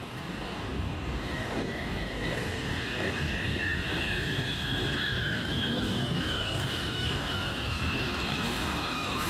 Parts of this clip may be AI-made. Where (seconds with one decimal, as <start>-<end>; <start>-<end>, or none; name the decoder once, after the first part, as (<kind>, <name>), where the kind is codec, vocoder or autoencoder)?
0.0-9.3 (codec, DAC)